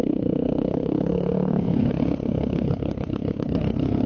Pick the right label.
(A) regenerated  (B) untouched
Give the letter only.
A